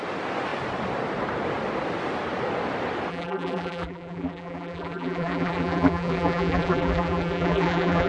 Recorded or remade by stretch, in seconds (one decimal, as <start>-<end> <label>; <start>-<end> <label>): 0.0-3.1 recorded; 3.1-8.1 remade